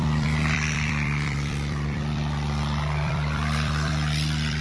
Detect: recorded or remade remade